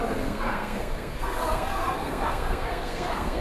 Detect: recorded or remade remade